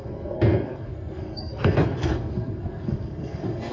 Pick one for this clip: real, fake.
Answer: fake